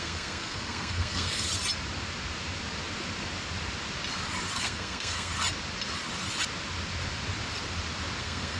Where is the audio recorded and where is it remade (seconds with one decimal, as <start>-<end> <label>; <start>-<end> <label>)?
0.0-1.5 remade; 1.5-4.6 recorded; 4.6-5.3 remade; 5.3-8.2 recorded; 8.2-8.6 remade